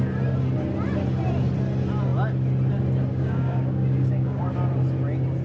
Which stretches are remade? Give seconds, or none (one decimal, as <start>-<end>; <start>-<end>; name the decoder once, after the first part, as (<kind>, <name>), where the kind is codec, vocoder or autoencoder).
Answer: 3.1-4.4 (codec, DAC)